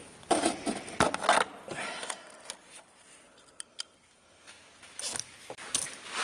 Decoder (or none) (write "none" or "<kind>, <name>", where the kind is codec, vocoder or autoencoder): none